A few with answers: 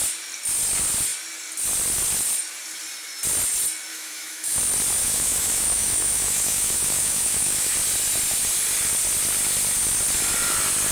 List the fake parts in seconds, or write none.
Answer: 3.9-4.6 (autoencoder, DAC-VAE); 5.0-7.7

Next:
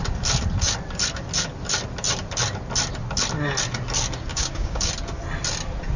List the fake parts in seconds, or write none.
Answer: 4.3-4.9 (codec, DAC)